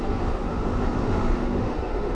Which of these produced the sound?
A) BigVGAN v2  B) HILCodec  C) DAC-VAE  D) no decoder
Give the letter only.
C